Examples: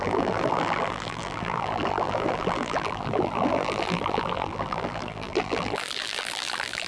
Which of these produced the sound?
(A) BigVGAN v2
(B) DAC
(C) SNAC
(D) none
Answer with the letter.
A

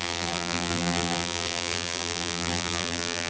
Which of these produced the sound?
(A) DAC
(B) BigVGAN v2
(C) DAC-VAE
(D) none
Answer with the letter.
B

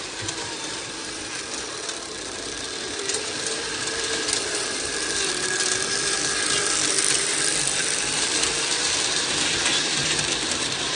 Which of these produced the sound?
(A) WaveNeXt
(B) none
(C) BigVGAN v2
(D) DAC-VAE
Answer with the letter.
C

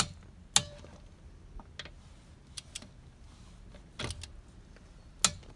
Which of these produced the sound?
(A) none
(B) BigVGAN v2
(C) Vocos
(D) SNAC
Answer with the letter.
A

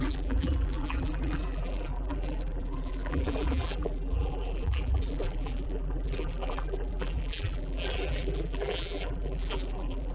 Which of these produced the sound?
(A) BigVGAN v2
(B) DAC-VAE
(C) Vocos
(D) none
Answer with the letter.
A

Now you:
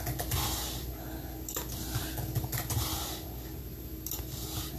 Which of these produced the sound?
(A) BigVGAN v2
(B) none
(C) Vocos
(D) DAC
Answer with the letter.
B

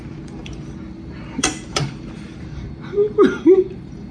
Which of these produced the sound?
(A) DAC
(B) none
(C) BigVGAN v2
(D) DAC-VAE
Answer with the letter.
C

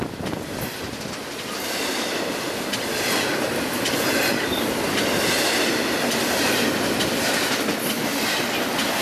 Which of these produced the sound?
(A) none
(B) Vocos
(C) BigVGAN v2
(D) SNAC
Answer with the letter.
A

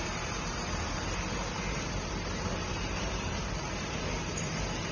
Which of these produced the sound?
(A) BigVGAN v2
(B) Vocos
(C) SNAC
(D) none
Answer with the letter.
A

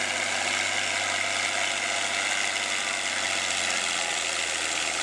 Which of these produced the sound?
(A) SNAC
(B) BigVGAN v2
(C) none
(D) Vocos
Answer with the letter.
C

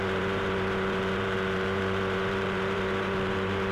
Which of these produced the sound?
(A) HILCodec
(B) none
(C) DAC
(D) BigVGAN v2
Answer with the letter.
D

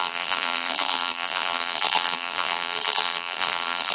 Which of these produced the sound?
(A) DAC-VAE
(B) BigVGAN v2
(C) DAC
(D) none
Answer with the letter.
B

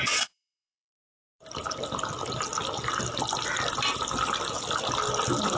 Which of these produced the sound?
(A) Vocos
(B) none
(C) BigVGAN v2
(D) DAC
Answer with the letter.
C